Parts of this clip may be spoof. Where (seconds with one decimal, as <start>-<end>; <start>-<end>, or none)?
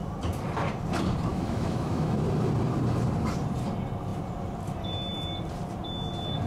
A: 1.3-2.2